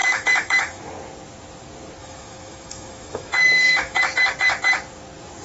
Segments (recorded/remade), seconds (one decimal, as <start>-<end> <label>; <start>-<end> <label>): 0.0-0.8 remade; 0.8-2.0 recorded; 2.0-4.0 remade; 4.0-5.4 recorded